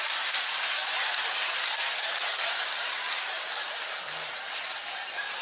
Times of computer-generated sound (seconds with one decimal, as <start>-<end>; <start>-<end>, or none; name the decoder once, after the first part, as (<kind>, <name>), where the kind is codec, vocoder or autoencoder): none

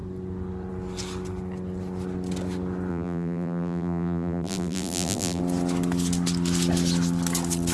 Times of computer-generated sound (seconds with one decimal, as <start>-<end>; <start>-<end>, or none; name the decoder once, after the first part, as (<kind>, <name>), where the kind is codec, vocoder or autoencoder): 2.9-5.4 (vocoder, BigVGAN v2)